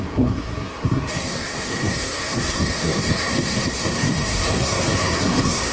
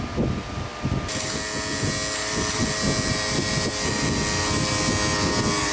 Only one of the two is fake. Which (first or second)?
first